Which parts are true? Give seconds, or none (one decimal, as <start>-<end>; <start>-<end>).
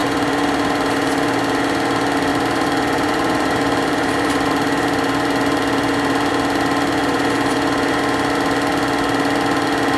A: 1.6-2.3; 6.3-7.0; 8.0-10.0